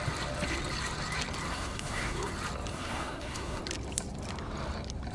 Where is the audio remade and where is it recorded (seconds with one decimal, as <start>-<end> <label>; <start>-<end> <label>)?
0.0-1.5 recorded; 1.5-2.3 remade; 2.3-2.7 recorded; 2.7-3.6 remade; 3.6-5.1 recorded